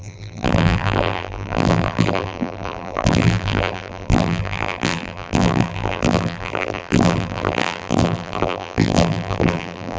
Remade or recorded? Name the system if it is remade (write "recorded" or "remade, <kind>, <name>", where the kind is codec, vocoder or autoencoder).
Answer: remade, vocoder, BigVGAN v2